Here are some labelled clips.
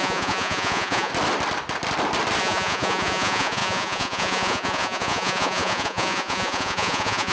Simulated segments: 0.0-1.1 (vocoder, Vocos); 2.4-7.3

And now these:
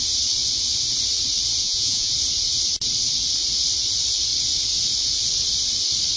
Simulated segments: 1.6-2.1 (vocoder, Vocos)

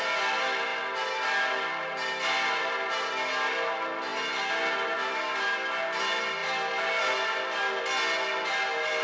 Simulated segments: none

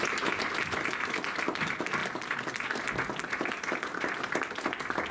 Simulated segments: none

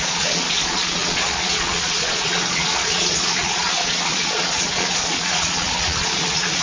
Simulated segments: 0.0-6.6 (vocoder, Vocos)

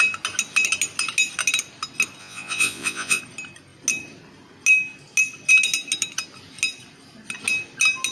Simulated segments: 2.2-3.2 (vocoder, Vocos)